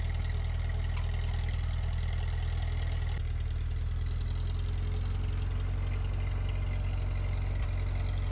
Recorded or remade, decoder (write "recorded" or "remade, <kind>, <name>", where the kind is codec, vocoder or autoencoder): recorded